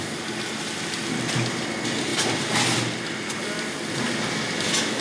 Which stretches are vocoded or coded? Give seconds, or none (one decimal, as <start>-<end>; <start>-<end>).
none